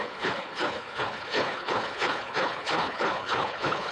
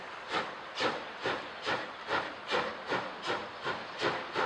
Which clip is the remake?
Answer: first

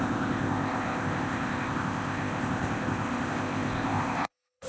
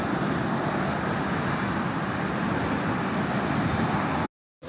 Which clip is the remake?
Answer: first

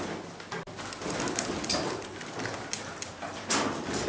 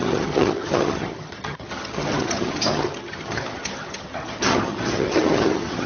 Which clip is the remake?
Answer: second